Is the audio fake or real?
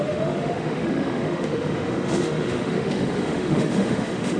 fake